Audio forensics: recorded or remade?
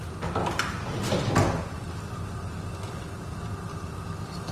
recorded